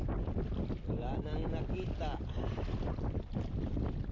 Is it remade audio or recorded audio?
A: recorded